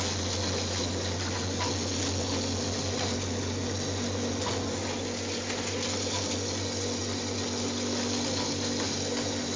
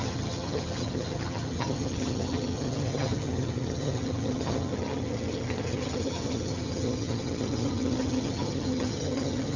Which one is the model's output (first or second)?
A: second